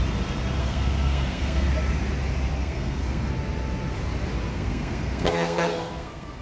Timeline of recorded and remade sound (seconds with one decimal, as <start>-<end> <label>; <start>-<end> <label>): 0.0-0.6 recorded; 0.6-1.7 remade; 1.7-2.6 recorded; 2.6-3.3 remade; 3.3-4.5 recorded; 4.5-6.4 remade